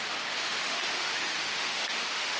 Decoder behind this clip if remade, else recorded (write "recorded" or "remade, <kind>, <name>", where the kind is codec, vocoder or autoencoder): remade, autoencoder, DAC-VAE